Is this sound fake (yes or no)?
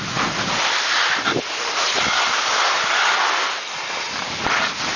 no